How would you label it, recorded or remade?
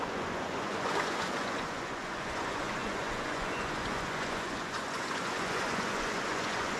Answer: remade